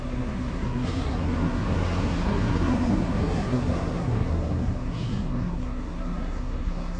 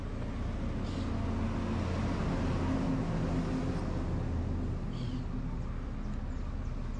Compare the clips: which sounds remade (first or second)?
first